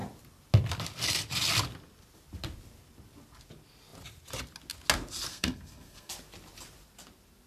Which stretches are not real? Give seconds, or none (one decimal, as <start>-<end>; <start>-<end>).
5.3-6.1